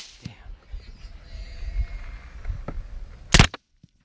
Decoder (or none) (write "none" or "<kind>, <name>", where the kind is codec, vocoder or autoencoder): none